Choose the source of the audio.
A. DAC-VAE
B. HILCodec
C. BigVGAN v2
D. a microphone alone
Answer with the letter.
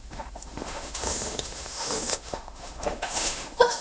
A